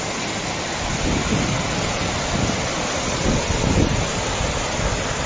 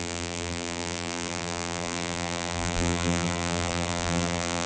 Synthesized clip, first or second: second